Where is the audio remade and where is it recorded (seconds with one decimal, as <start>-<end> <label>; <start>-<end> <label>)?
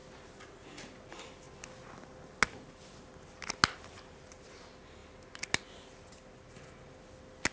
0.0-7.5 recorded